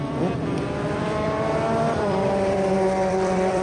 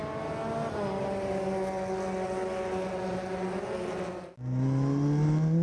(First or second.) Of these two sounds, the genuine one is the second